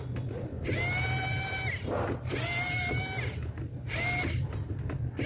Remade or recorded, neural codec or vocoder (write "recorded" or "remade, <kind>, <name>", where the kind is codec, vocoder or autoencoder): recorded